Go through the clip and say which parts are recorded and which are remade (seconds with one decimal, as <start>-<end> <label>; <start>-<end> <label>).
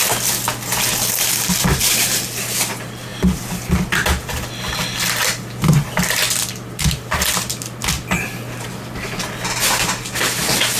0.0-10.8 recorded